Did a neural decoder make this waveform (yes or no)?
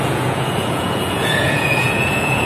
yes